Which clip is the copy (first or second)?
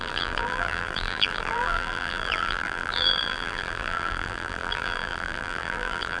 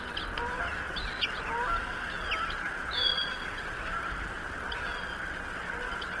first